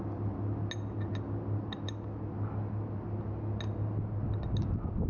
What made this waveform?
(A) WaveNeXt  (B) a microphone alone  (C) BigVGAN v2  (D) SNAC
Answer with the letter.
B